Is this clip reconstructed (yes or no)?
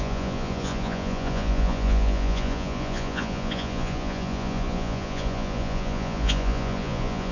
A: yes